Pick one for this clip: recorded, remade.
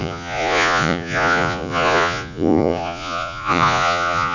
remade